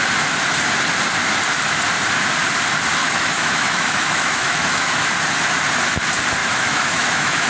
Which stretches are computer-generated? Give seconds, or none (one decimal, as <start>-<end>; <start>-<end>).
3.0-5.1; 6.4-7.5